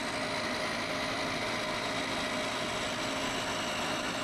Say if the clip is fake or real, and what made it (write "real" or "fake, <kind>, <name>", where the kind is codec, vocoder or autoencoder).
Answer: real